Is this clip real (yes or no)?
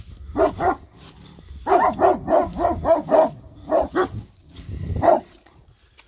yes